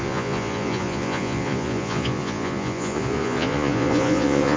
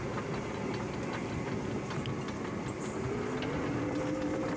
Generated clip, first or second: first